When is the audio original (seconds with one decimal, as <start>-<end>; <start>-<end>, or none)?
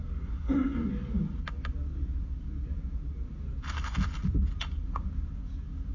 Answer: 0.0-5.9